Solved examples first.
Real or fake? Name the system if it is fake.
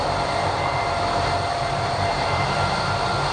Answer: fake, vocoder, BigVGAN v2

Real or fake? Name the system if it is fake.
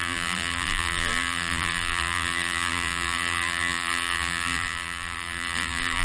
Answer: fake, vocoder, BigVGAN v2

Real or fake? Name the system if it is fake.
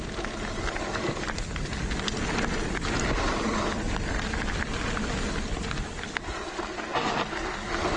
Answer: real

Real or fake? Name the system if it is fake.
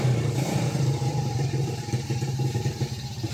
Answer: fake, vocoder, BigVGAN v2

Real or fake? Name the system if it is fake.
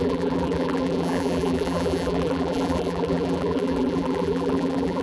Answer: fake, vocoder, BigVGAN v2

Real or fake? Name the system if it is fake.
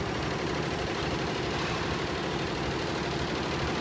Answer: fake, vocoder, BigVGAN v2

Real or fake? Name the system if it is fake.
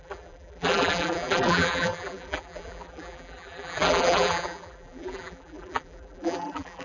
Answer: fake, vocoder, BigVGAN v2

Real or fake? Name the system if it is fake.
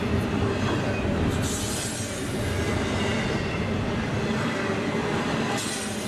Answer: real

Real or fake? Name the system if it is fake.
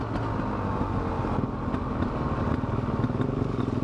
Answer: real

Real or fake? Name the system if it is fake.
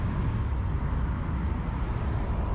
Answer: real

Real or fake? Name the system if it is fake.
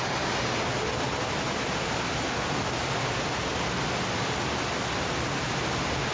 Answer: real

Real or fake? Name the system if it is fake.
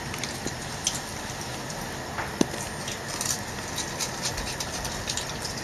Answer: real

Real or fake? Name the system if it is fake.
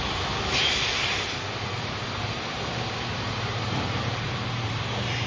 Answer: fake, vocoder, BigVGAN v2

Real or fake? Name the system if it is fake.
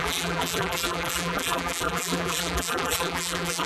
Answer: fake, vocoder, BigVGAN v2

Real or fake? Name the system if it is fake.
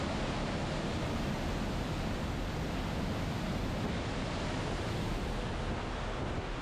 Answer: real